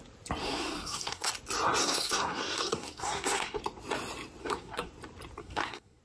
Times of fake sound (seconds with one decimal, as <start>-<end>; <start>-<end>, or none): 0.4-1.3; 1.8-3.6; 4.4-4.9; 5.4-6.0